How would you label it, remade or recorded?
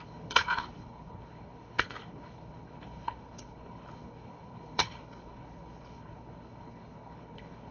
remade